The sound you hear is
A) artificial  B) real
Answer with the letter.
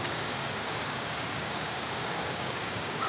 A